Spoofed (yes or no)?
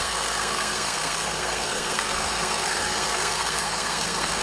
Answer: yes